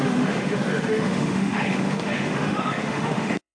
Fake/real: fake